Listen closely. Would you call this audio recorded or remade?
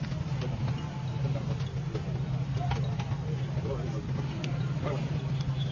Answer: recorded